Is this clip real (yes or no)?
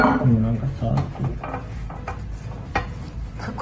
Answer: yes